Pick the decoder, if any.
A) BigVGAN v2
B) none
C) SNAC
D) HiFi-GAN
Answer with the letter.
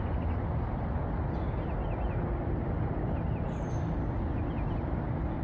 B